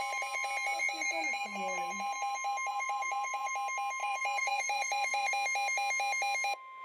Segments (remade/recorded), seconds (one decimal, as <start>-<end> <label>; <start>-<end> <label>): 0.0-2.7 recorded; 2.7-3.5 remade; 3.5-4.0 recorded; 4.0-5.3 remade; 5.3-6.8 recorded